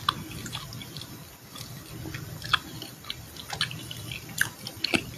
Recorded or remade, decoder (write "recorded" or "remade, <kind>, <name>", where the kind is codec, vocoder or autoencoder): recorded